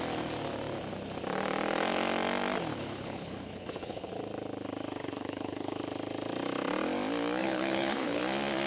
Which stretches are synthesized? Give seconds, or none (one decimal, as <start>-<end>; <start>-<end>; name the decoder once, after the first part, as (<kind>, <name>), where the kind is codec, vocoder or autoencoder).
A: 2.7-4.1 (codec, HILCodec); 5.0-5.8; 7.4-8.2